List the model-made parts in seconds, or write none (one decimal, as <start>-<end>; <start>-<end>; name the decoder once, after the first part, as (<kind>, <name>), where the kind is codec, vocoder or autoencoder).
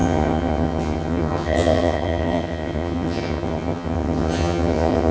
0.0-5.1 (vocoder, HiFi-GAN)